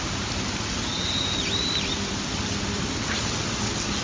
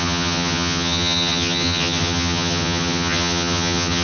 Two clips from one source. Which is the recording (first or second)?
first